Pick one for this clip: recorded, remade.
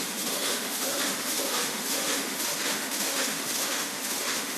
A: remade